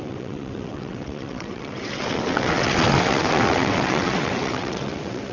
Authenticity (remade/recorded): remade